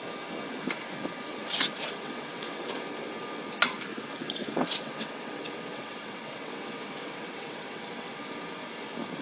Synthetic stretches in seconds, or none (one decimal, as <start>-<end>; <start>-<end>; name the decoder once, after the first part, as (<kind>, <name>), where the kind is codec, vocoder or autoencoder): 1.3-2.8 (vocoder, WaveNeXt); 3.9-8.2